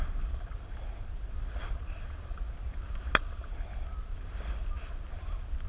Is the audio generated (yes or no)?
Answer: no